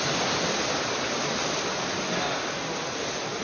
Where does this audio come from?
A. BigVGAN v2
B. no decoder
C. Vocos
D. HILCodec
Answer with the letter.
B